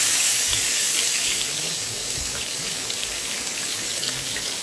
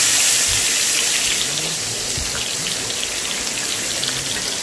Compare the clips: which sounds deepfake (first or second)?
first